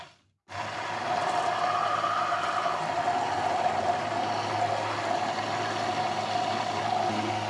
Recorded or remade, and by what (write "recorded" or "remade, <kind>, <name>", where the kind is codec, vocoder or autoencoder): recorded